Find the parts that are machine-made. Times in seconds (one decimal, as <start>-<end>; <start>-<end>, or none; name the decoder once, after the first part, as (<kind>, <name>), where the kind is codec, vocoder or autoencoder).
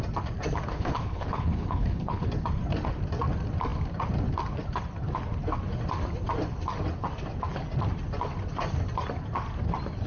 0.7-2.3 (codec, HILCodec)